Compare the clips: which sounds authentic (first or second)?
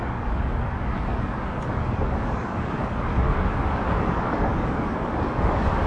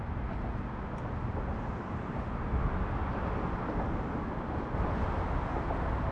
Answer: second